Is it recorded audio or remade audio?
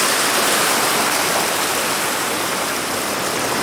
recorded